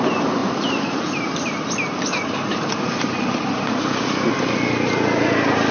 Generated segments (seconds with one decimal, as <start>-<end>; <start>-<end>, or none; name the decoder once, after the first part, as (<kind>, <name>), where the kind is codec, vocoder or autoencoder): 0.4-3.8 (vocoder, BigVGAN v2)